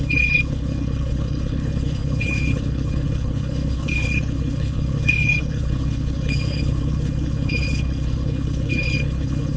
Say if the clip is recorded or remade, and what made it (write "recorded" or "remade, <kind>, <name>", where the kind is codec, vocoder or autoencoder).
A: remade, codec, HILCodec